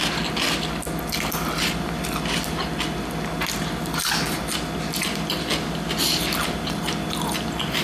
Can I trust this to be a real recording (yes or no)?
yes